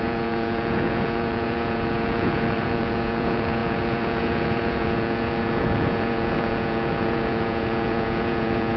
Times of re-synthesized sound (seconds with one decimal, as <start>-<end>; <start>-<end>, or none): 0.0-8.8